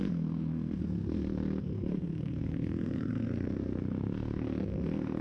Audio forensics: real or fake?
fake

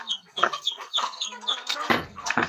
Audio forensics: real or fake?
fake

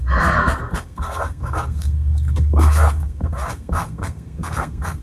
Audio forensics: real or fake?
fake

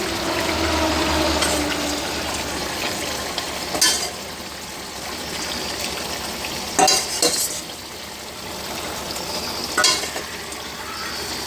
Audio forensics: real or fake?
real